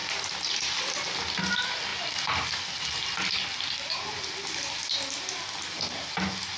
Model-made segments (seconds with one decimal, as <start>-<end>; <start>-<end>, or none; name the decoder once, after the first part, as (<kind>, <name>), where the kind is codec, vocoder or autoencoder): none